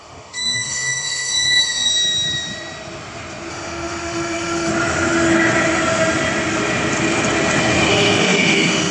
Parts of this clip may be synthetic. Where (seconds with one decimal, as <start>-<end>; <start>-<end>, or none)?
0.0-1.9; 3.5-4.7; 7.9-8.9